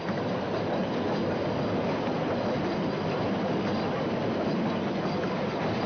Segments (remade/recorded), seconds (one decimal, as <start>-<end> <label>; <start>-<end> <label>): 0.0-5.9 recorded